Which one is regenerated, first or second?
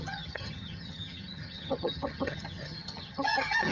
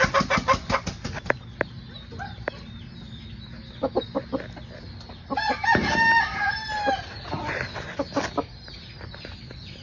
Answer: first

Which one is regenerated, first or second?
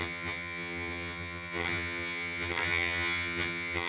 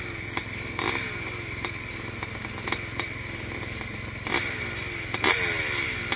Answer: first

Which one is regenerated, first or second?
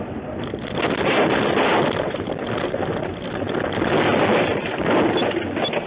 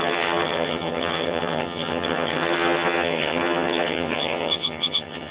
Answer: second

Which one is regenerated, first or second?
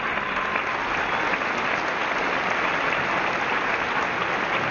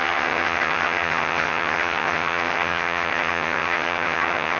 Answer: second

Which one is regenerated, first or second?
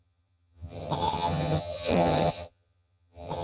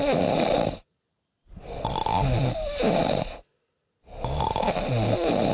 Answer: first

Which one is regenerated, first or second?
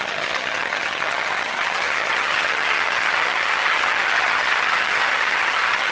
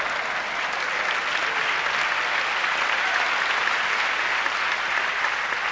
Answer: first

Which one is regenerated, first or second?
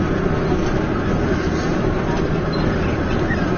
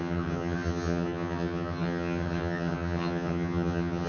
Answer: second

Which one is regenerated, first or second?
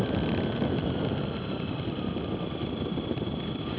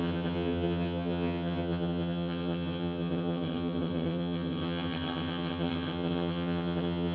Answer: second